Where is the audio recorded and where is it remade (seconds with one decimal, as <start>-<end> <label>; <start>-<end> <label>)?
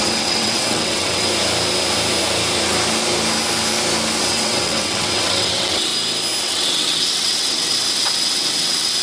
0.0-1.3 remade; 1.3-4.2 recorded; 4.2-5.9 remade; 5.9-6.4 recorded; 6.4-9.0 remade